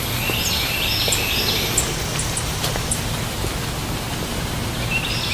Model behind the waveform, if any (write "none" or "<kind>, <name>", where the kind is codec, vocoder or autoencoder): none